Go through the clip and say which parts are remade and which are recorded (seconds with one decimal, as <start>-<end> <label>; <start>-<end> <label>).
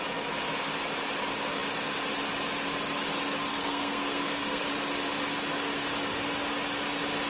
0.0-3.5 recorded; 3.5-4.6 remade; 4.6-7.3 recorded